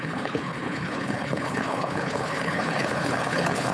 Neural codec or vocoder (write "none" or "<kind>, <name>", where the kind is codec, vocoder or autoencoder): codec, HILCodec